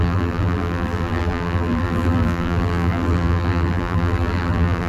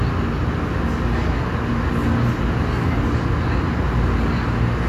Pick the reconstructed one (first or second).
first